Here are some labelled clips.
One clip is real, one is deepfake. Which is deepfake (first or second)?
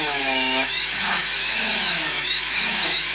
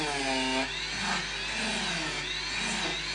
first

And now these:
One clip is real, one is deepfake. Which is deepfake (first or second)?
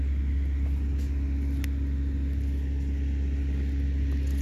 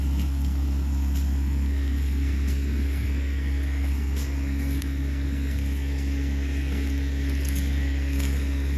second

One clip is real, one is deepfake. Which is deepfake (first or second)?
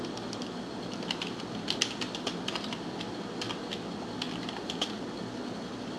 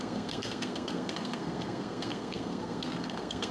second